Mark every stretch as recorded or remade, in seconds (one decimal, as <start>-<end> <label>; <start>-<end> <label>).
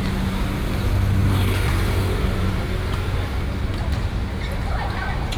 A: 0.0-5.4 recorded